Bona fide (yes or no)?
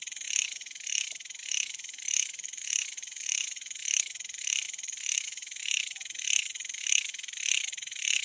no